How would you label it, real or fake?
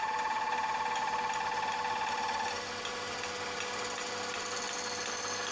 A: real